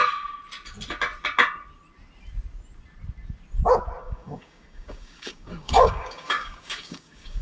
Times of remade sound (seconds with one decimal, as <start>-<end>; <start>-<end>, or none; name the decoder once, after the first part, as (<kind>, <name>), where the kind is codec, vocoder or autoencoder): 4.0-7.4 (codec, DAC)